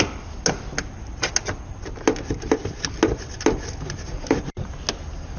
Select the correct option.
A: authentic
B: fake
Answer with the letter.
A